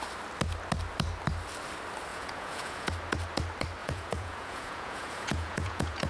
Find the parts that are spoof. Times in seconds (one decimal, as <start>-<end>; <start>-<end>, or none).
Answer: 2.1-2.9; 3.8-6.1